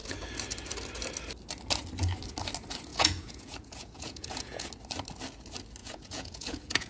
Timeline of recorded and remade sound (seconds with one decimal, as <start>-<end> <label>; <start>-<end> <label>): 0.0-2.9 recorded; 2.9-4.7 remade; 4.7-5.8 recorded; 5.8-6.9 remade